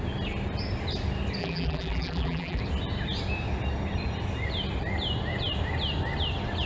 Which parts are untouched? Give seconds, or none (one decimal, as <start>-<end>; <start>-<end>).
0.0-1.4; 2.6-6.7